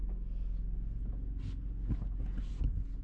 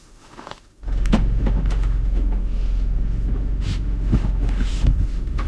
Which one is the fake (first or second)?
second